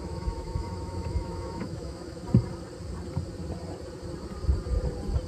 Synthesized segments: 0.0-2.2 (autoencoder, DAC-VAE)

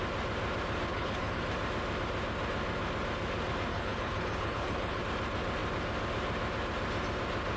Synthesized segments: 0.9-1.4 (codec, HILCodec); 3.7-5.0